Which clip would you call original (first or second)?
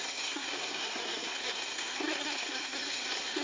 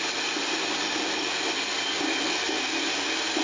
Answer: second